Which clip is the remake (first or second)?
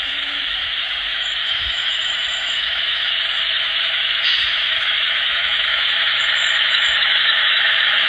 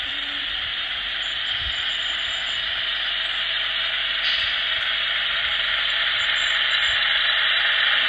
first